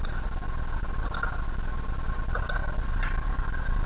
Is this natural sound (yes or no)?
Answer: yes